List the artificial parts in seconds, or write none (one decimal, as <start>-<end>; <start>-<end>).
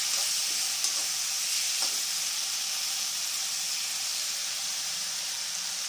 4.1-5.5